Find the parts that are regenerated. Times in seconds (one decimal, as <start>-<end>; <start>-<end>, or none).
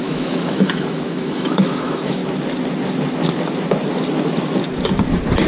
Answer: 0.0-2.2